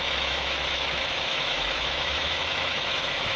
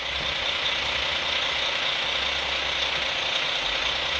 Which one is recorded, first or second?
second